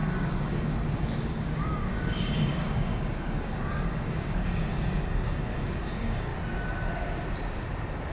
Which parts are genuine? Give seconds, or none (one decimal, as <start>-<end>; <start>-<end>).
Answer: 6.3-8.1